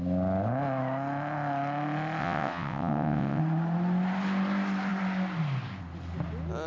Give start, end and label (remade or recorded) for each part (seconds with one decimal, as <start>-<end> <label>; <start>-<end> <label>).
0.0-2.2 recorded; 2.2-3.4 remade; 3.4-6.7 recorded